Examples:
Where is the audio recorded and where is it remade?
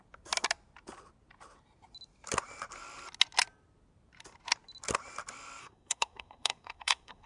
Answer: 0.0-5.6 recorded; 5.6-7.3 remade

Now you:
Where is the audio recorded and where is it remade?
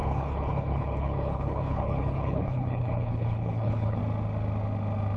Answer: 0.0-4.0 remade; 4.0-5.2 recorded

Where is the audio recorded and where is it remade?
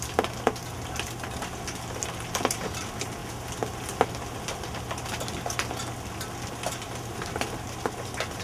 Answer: 0.0-8.4 recorded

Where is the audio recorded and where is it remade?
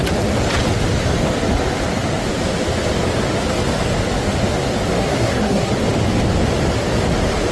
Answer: 0.0-5.0 recorded; 5.0-5.7 remade; 5.7-7.5 recorded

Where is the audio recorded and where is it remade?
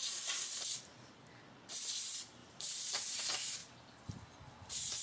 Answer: 0.0-2.4 recorded; 2.4-3.2 remade; 3.2-3.6 recorded; 3.6-5.0 remade